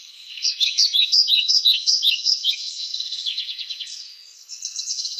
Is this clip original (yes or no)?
no